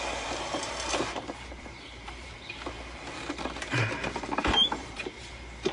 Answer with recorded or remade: remade